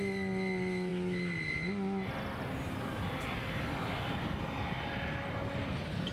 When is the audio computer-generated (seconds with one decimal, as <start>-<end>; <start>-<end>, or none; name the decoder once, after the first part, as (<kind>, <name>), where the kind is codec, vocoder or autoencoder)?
none